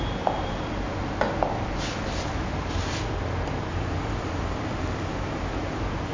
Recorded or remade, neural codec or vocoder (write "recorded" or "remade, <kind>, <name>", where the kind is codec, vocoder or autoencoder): recorded